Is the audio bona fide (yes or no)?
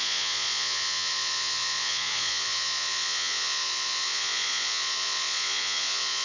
no